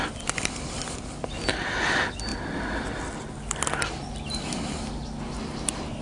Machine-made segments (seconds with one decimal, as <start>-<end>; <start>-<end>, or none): none